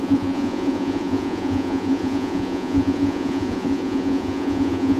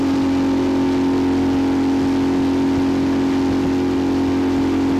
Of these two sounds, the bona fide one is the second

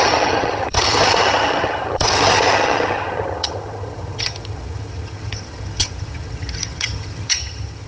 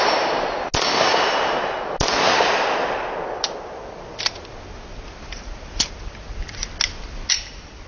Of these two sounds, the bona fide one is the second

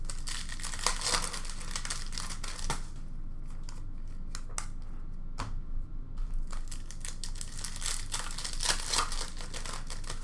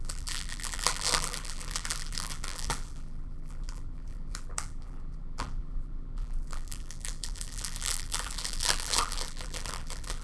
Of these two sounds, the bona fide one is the first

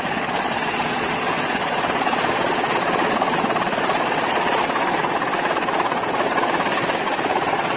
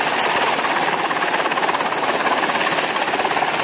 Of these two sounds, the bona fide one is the second